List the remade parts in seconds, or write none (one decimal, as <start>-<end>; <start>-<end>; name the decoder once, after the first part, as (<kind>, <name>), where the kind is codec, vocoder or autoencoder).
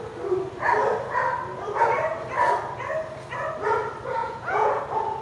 4.2-4.8 (vocoder, Vocos)